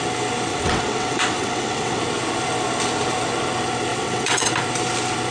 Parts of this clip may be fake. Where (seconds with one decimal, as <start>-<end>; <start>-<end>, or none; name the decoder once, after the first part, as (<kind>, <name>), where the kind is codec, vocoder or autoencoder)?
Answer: 0.5-2.0 (vocoder, WaveNeXt); 3.9-4.5